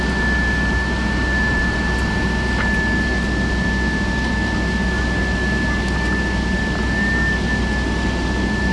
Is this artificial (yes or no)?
no